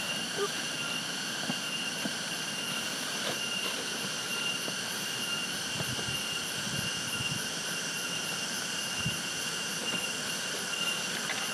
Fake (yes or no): yes